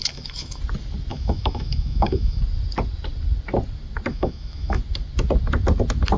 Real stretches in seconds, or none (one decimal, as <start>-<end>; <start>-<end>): 0.6-1.1; 2.4-4.1; 4.8-6.2